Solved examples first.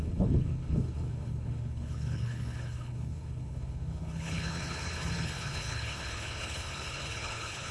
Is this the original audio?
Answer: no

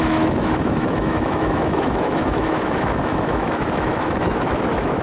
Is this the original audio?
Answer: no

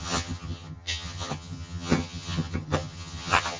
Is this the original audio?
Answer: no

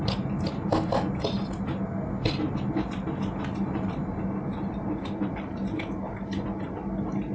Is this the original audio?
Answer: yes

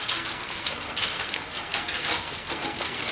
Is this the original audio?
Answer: no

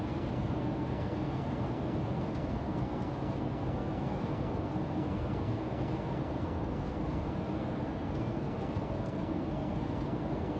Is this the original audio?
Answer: no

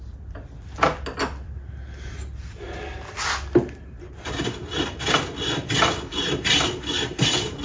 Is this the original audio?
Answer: yes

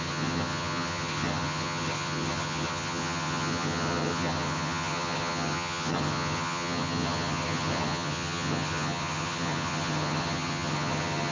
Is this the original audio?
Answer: no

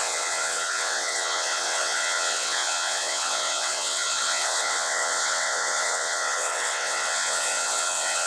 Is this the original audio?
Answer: no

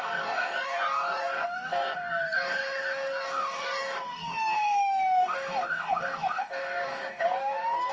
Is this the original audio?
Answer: no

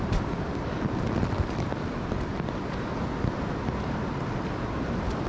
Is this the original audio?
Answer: yes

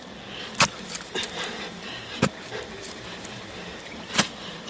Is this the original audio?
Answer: no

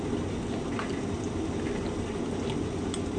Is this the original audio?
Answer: yes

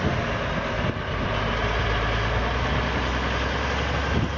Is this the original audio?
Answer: yes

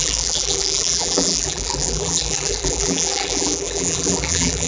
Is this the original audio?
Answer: no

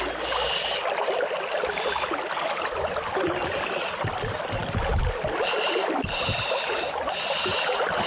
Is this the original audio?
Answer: yes